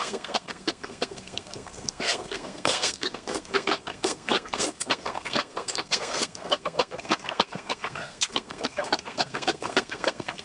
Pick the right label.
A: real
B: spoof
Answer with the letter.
B